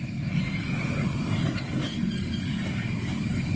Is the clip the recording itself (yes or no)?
yes